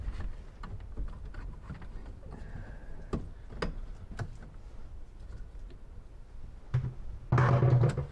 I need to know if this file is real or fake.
real